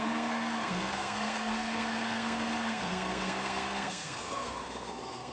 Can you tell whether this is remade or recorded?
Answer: remade